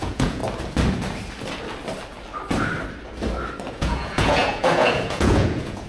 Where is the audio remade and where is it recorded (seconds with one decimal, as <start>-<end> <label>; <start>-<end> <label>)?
0.0-0.4 remade; 0.4-3.7 recorded; 3.7-5.9 remade